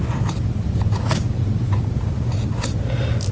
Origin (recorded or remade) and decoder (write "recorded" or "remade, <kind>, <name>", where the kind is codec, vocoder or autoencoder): recorded